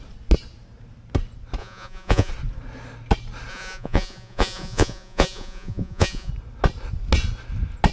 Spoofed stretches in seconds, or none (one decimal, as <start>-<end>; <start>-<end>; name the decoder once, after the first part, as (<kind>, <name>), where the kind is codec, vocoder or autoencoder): 1.6-2.3 (vocoder, Vocos); 3.5-6.3